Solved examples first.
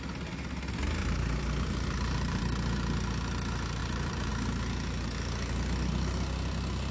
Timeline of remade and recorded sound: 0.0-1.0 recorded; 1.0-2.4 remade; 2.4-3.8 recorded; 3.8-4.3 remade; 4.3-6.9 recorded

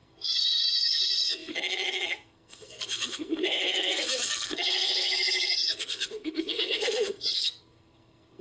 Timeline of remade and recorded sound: 0.0-8.4 remade

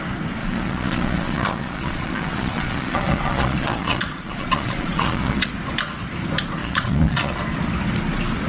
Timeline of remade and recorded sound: 0.0-0.4 recorded; 0.4-5.5 remade; 5.5-6.6 recorded; 6.6-7.4 remade; 7.4-8.5 recorded